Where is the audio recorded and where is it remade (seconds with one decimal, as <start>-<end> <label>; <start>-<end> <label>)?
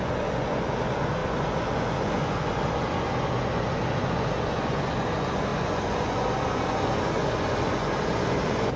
0.0-8.8 remade